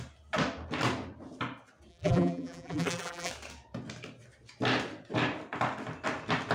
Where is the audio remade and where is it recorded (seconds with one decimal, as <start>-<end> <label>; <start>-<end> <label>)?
0.0-1.9 recorded; 1.9-3.3 remade; 3.3-6.5 recorded